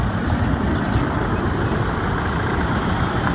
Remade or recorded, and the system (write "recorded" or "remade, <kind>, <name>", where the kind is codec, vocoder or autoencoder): remade, vocoder, BigVGAN v2